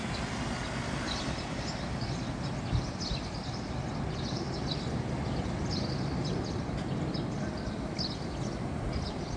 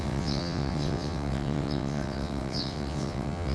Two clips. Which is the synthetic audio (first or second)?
second